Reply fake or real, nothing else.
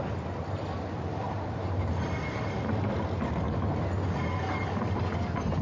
real